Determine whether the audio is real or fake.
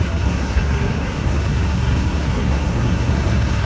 fake